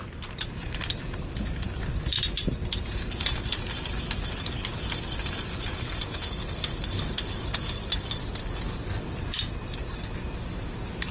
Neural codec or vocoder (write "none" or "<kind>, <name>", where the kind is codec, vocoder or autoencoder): none